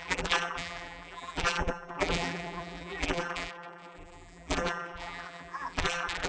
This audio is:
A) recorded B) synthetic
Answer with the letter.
B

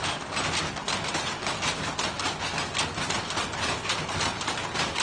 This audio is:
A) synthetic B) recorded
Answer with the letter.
B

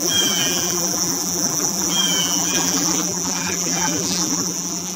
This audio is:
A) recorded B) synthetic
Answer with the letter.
B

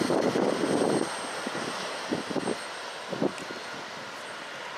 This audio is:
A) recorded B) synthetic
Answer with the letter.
A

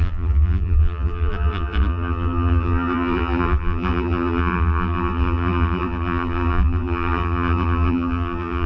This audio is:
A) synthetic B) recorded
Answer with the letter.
A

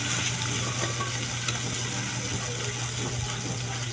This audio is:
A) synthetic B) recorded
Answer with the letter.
B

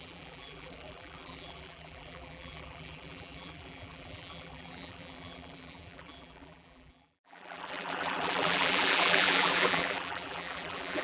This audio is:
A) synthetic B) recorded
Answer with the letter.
A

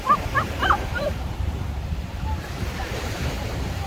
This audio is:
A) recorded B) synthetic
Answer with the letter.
B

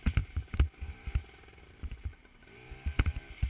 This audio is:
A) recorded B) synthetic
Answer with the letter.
B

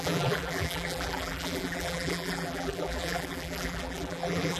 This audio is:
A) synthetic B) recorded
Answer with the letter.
A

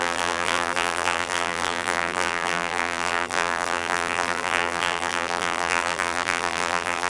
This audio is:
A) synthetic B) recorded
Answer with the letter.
A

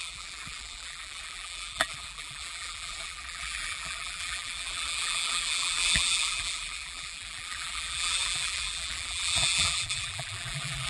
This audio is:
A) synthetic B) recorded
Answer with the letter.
A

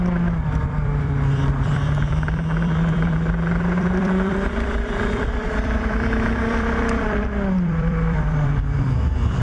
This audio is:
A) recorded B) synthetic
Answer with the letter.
B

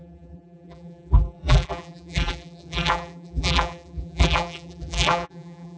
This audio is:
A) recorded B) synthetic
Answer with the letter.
B